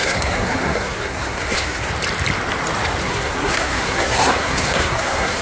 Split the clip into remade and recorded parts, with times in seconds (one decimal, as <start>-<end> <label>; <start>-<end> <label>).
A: 0.0-1.9 remade; 1.9-3.0 recorded; 3.0-5.4 remade